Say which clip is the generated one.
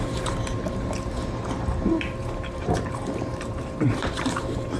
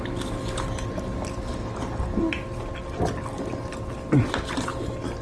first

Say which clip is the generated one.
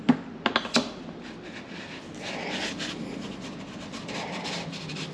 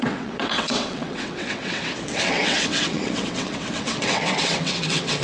second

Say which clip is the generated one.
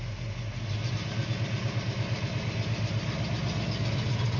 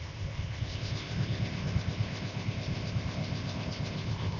second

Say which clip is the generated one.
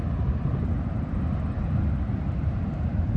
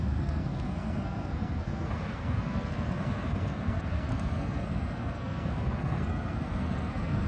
second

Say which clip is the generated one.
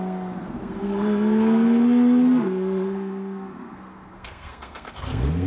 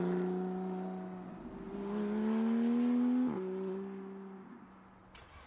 first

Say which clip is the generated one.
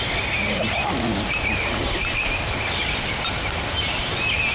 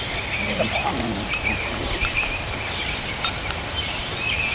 second